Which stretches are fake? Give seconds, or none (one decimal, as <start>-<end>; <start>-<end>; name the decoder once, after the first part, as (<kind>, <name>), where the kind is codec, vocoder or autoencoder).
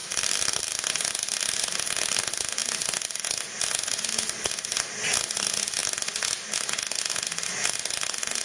0.0-0.6 (vocoder, BigVGAN v2)